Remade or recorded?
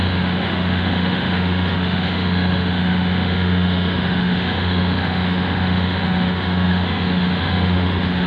remade